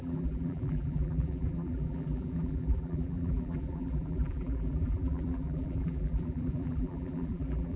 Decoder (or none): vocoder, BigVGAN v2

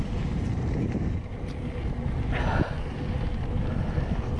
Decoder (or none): none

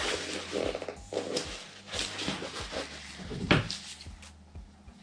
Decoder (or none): none